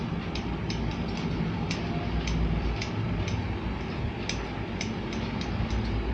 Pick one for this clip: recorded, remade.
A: recorded